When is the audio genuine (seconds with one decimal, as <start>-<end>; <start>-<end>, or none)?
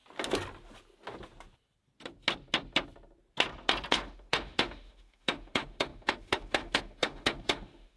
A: 0.0-3.9